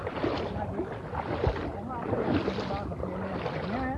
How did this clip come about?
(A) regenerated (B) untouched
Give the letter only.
B